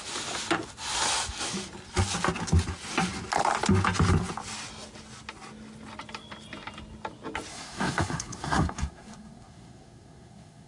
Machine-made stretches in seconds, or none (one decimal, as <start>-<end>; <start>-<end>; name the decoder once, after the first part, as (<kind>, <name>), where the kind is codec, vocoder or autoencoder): 7.5-10.7 (codec, SNAC)